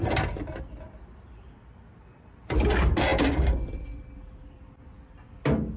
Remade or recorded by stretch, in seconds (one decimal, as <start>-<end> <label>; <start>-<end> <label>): 0.0-5.8 recorded